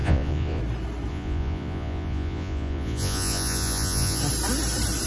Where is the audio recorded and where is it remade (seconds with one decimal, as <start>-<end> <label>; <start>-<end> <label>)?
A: 0.0-0.6 remade; 0.6-1.1 recorded; 1.1-4.2 remade; 4.2-5.1 recorded